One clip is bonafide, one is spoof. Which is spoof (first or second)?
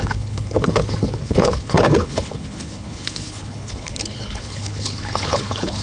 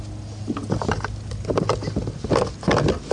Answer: first